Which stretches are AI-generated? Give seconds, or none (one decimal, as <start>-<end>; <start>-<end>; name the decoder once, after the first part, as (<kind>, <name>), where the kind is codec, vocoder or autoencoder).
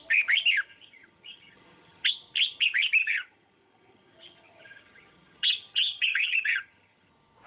0.7-2.1 (vocoder, HiFi-GAN); 3.0-7.1